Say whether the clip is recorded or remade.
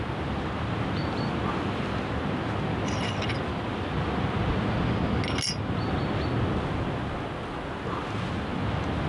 recorded